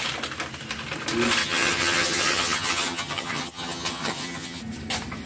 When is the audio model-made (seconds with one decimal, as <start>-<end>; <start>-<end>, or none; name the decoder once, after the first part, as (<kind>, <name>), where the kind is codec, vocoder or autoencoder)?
1.4-4.6 (vocoder, HiFi-GAN)